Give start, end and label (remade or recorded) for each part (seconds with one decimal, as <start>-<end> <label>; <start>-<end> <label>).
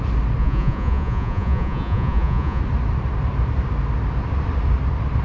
0.0-0.4 recorded; 0.4-2.6 remade; 2.6-5.2 recorded